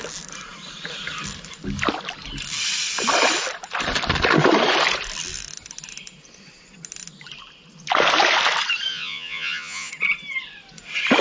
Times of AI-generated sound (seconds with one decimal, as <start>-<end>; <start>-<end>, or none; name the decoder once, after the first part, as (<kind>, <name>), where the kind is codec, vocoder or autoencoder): 8.9-9.9 (vocoder, Vocos)